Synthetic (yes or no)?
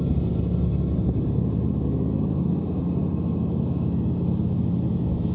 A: no